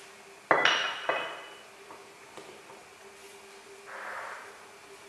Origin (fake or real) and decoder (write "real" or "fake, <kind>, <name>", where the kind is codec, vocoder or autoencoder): real